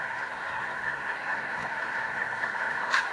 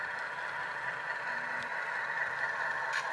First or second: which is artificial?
first